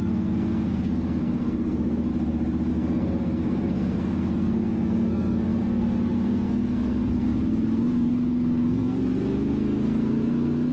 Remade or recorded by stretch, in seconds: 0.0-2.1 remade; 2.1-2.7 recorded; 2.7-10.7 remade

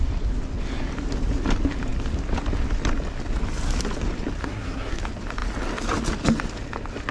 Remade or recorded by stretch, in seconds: 0.0-4.4 recorded; 4.4-5.0 remade; 5.0-7.1 recorded

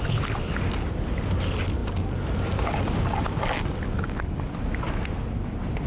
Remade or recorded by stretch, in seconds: 0.0-5.9 recorded

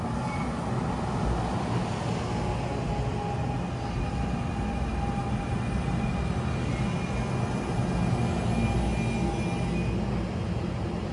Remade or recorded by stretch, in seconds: 0.0-11.1 recorded

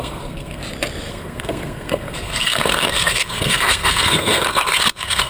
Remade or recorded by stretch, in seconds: 0.0-0.6 remade; 0.6-1.1 recorded; 1.1-5.3 remade